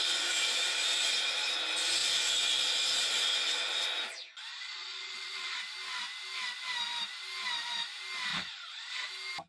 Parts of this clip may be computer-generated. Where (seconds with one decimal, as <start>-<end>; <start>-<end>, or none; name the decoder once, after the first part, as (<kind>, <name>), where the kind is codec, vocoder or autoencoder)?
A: 4.5-5.6 (vocoder, Vocos); 8.3-9.1